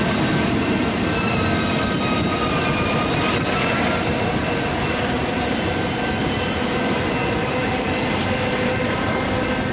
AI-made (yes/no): no